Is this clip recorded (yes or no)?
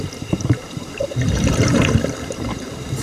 no